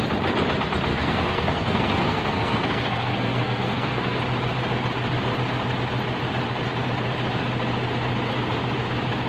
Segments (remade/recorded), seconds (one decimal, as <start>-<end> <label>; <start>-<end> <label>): 0.0-0.9 recorded; 0.9-4.2 remade; 4.2-9.3 recorded